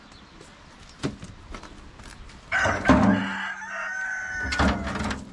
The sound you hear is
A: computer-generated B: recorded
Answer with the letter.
B